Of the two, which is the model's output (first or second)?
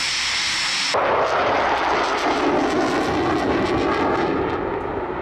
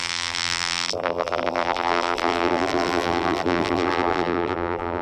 second